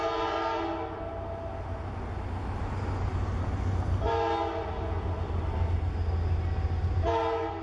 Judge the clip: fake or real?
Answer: real